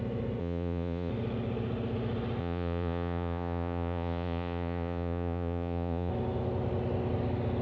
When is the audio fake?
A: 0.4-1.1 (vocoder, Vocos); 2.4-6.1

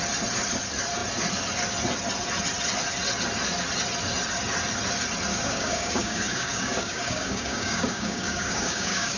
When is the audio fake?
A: 5.3-9.2 (codec, DAC)

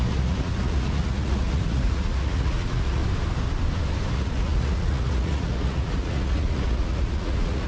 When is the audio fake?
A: 0.0-3.0 (vocoder, Vocos); 4.1-7.7

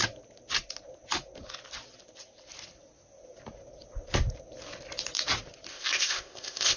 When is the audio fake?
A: 5.7-6.8 (codec, ZipCodec)

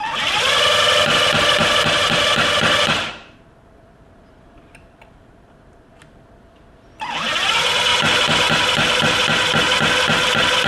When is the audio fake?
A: 1.6-5.9 (vocoder, BigVGAN v2); 7.9-8.5

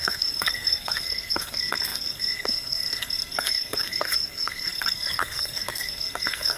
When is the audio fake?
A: 0.0-6.6 (codec, SNAC)